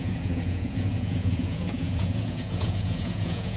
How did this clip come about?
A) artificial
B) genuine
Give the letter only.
A